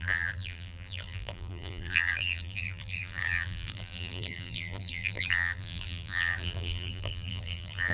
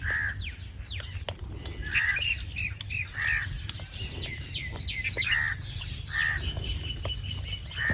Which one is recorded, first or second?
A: second